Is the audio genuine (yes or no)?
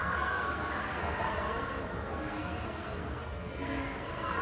no